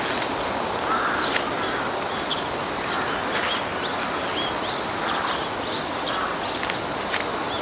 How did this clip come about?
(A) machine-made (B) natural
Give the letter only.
B